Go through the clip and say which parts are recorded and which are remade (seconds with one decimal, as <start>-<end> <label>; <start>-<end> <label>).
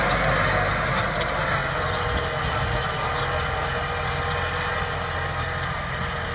0.0-6.3 recorded